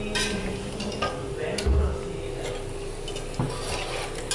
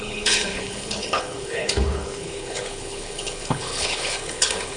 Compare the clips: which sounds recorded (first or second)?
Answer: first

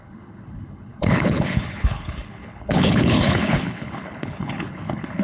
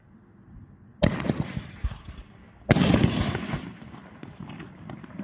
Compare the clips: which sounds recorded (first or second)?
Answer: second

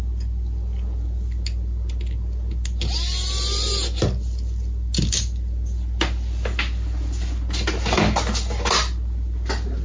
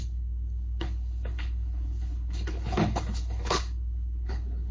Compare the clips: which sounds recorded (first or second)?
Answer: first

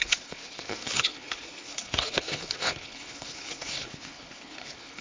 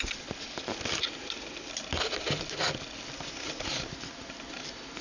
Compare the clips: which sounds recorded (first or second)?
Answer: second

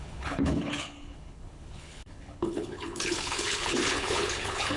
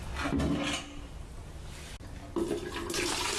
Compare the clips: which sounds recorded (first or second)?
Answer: second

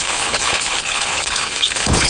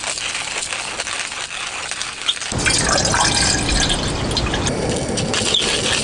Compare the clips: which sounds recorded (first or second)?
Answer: second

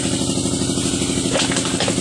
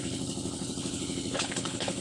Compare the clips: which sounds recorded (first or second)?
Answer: first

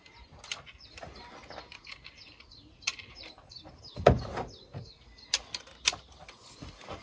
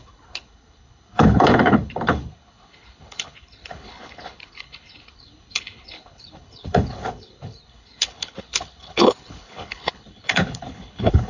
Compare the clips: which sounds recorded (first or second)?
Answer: first